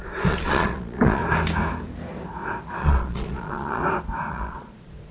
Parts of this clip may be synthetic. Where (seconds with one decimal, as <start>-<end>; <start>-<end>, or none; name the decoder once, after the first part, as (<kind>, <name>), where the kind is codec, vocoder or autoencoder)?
0.0-1.2 (vocoder, Vocos); 2.8-3.8; 4.3-5.1